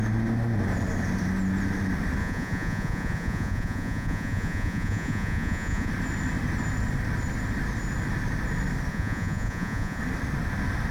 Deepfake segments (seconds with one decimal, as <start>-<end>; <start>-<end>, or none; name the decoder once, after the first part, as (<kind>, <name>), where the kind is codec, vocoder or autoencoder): 2.2-5.9 (vocoder, Vocos); 8.9-10.0